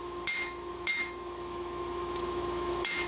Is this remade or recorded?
remade